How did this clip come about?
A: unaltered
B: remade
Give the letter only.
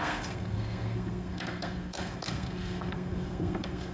B